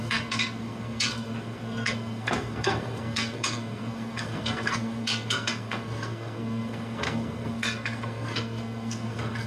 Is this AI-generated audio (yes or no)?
yes